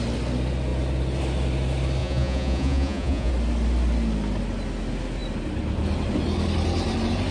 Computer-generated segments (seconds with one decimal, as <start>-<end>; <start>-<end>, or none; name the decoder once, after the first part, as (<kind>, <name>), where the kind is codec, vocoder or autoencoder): 2.0-3.3 (vocoder, Vocos)